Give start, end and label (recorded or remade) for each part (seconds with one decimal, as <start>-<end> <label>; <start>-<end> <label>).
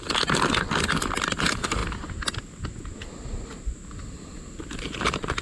0.0-5.4 recorded